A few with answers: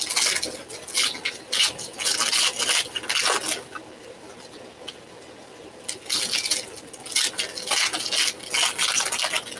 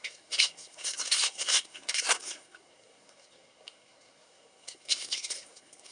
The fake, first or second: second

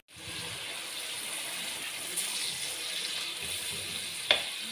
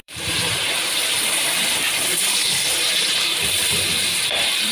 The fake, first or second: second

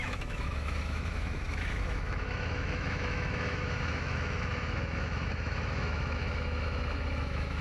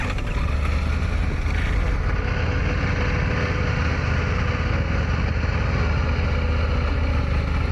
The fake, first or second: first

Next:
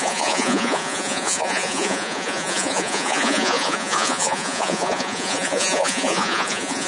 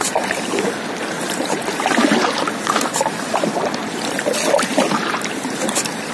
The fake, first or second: first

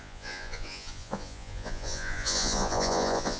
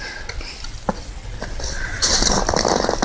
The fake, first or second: first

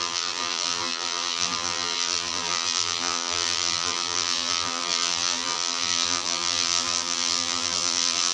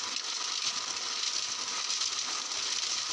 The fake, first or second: first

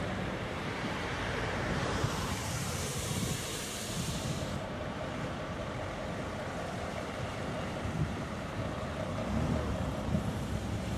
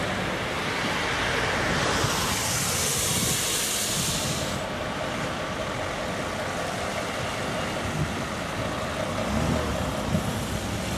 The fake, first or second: first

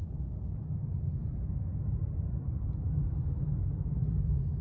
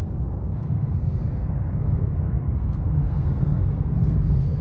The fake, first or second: second